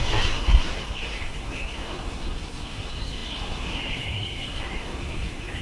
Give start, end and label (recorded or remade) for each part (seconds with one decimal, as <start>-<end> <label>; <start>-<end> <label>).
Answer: 0.0-5.6 remade